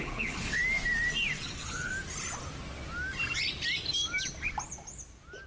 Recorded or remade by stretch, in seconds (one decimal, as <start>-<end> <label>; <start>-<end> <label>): 0.0-0.6 remade; 0.6-1.5 recorded; 1.5-1.9 remade; 1.9-5.5 recorded